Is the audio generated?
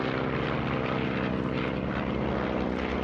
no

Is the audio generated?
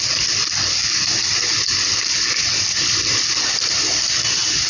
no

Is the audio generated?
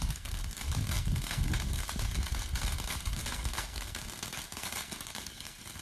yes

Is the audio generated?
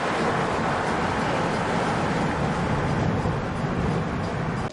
no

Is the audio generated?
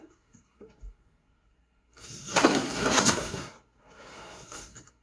yes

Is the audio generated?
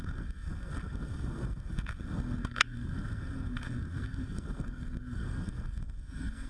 yes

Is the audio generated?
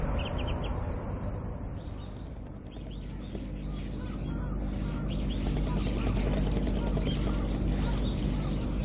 no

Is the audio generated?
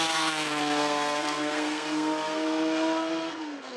yes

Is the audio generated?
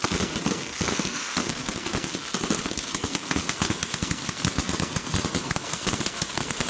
yes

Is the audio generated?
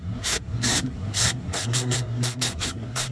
yes